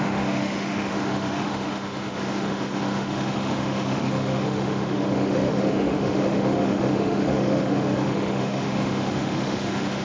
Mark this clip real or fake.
fake